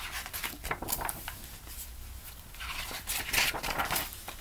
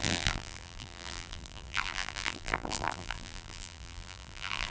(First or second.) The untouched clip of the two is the first